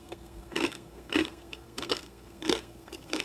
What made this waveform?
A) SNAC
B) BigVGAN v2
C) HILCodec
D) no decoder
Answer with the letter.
A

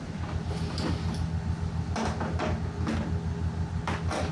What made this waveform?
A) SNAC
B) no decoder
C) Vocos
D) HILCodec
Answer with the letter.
B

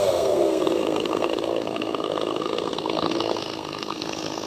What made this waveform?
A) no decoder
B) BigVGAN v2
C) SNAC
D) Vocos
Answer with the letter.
C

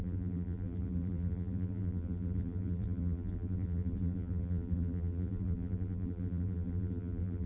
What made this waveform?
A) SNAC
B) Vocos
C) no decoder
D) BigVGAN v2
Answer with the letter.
D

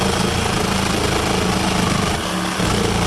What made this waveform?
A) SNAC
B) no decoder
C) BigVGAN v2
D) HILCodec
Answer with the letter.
B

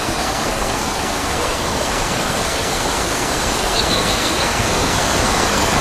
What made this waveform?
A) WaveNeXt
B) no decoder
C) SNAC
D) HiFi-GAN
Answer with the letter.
C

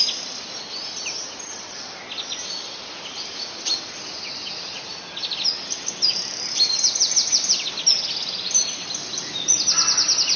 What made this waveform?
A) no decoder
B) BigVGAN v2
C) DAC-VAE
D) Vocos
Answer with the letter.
A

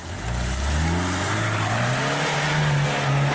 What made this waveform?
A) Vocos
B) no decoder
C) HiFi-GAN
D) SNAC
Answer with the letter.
B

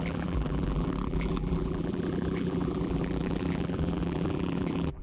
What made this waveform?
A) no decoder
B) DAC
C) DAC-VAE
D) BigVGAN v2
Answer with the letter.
D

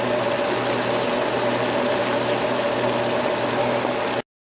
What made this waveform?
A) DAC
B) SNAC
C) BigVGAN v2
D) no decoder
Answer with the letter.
D